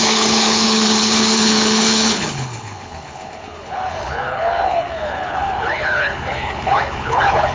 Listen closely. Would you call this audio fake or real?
fake